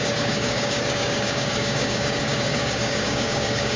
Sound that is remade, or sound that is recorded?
remade